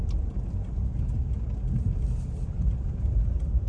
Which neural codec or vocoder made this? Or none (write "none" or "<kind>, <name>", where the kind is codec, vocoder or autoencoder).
none